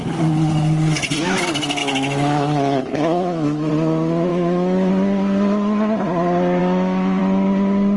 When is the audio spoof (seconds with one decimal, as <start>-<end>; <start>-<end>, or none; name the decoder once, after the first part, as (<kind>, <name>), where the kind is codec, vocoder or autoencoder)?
1.8-3.7 (autoencoder, DAC-VAE); 4.3-4.9; 6.6-7.2